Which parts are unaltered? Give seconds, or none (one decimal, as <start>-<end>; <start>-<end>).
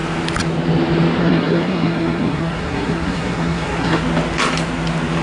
0.0-1.2; 4.0-5.2